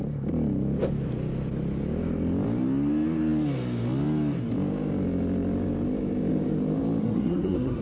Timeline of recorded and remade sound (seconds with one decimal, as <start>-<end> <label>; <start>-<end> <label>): 0.0-7.0 recorded; 7.0-7.8 remade